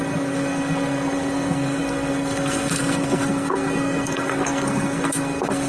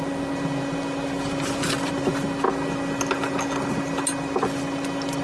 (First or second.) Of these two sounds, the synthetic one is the first